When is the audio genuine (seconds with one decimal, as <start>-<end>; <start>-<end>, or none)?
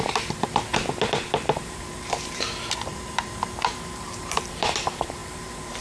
0.7-1.4